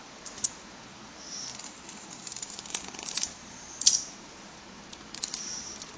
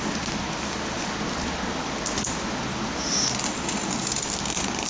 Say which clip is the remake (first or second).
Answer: first